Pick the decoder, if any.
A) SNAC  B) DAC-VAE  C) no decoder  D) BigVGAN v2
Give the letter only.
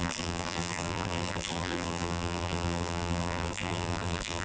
D